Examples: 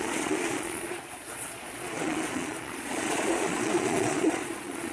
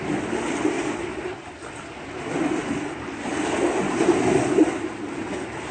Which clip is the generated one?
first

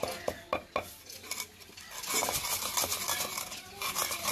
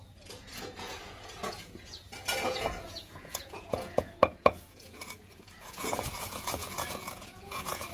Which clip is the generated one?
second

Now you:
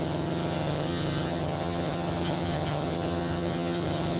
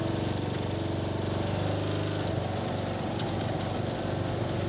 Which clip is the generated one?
first